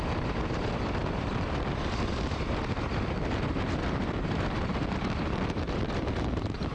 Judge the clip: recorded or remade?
remade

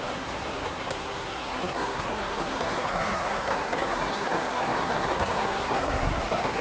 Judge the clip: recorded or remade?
remade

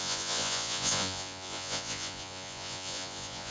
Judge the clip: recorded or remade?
remade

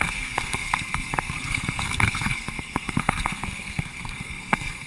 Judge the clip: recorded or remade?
remade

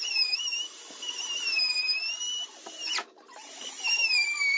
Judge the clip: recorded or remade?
remade